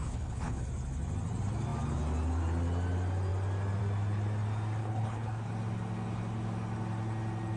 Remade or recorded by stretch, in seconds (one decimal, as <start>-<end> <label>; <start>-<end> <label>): 0.0-0.7 remade; 0.7-4.8 recorded; 4.8-5.5 remade; 5.5-7.6 recorded